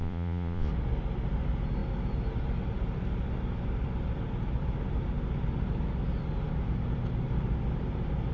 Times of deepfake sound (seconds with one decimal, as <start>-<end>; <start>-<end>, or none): 0.0-0.7